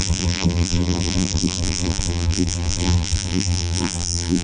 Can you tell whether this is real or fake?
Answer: fake